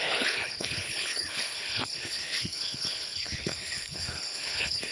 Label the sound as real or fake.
fake